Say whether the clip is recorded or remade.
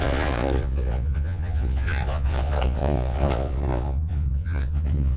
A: remade